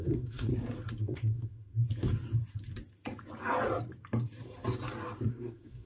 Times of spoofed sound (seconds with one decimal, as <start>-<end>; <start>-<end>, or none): 0.0-0.5; 1.0-1.8; 5.3-5.9

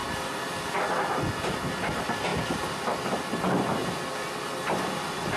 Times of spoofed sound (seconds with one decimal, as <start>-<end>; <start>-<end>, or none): none

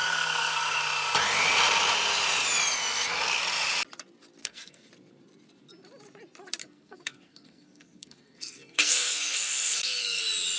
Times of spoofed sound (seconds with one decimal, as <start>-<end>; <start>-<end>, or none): 0.0-0.8; 4.4-4.9; 6.6-10.2